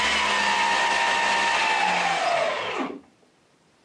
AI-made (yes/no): no